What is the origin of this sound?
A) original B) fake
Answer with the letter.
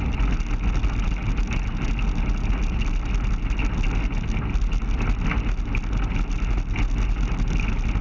A